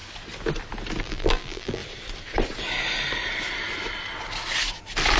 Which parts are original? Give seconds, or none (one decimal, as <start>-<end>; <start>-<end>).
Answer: 0.0-1.0; 1.8-5.2